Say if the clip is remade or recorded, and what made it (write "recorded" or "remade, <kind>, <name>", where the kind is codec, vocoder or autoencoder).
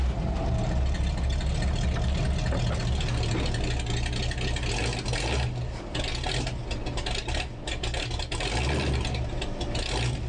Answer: recorded